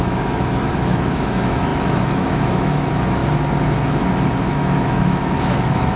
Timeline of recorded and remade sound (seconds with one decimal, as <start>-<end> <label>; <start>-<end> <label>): 0.0-3.2 remade; 3.2-4.4 recorded; 4.4-6.0 remade